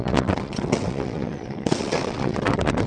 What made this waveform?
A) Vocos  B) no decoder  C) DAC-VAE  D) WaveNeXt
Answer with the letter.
D